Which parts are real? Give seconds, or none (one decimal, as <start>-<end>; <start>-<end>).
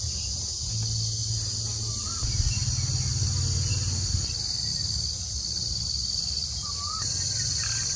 0.0-8.0